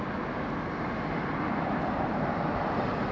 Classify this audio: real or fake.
real